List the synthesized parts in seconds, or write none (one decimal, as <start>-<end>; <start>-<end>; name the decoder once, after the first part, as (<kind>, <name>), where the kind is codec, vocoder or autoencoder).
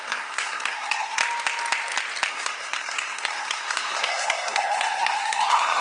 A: 0.0-1.2 (codec, SNAC); 2.3-5.8